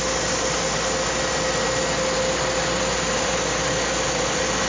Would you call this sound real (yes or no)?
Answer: yes